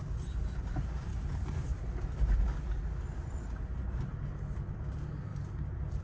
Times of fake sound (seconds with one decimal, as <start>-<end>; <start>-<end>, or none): none